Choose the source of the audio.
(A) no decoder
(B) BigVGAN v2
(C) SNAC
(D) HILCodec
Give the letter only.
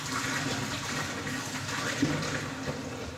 A